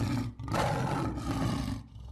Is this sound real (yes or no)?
yes